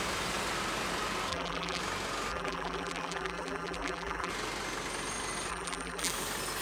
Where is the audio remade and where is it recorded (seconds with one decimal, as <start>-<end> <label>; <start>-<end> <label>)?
0.0-1.3 recorded; 1.3-1.8 remade; 1.8-2.3 recorded; 2.3-4.3 remade; 4.3-5.5 recorded; 5.5-6.1 remade; 6.1-6.6 recorded